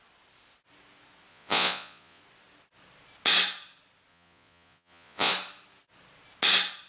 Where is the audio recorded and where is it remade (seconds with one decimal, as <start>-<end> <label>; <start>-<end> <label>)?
0.0-1.3 recorded; 1.3-2.2 remade; 2.2-4.1 recorded; 4.1-5.3 remade; 5.3-6.9 recorded